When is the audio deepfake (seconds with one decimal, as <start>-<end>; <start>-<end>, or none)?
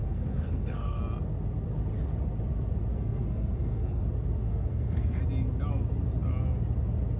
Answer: 0.0-1.0; 2.9-4.0; 4.4-5.2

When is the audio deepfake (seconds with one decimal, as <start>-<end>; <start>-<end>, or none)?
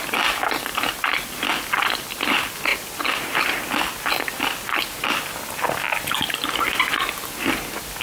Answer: none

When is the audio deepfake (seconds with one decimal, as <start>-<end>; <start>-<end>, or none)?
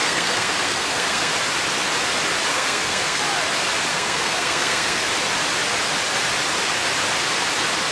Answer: 0.0-1.3; 2.5-3.2; 3.9-5.1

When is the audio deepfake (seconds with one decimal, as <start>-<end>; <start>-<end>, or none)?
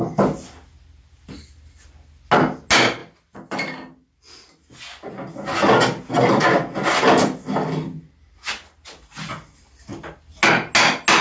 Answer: none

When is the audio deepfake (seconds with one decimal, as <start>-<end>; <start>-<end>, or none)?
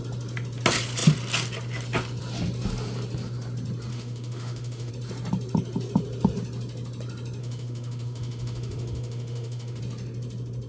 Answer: 3.9-4.9; 7.4-9.8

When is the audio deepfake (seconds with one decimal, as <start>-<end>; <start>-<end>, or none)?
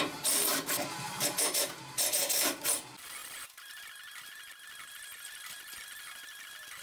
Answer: 0.5-1.7; 2.2-2.8; 3.2-3.8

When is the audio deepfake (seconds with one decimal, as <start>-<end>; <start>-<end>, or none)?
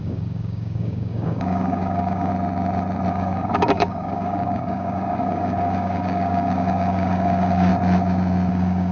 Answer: 0.0-2.3; 3.1-7.7; 8.5-8.9